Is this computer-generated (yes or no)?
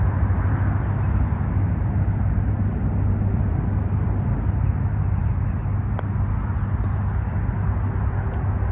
no